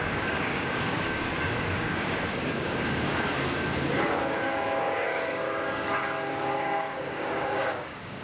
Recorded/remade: remade